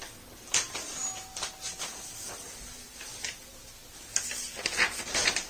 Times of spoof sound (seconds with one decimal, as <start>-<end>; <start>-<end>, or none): none